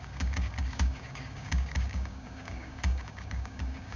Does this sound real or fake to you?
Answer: fake